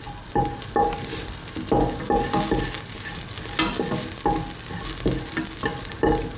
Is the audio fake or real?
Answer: real